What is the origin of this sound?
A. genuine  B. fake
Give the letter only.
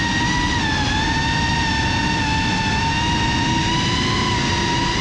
A